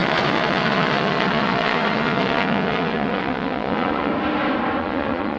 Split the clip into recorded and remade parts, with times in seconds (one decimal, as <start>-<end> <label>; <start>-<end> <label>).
0.0-4.1 remade; 4.1-4.8 recorded; 4.8-5.4 remade